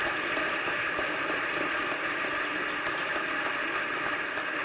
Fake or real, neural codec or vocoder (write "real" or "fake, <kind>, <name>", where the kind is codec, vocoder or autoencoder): real